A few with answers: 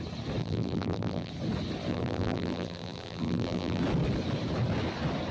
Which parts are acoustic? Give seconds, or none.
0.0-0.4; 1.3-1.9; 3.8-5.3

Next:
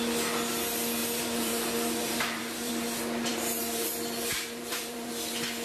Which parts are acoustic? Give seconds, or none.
0.0-1.0; 2.7-3.3; 3.9-4.3; 5.1-5.6

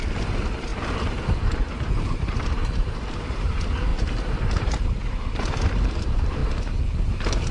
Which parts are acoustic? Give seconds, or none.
6.4-7.1

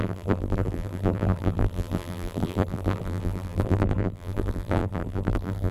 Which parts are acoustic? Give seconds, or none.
none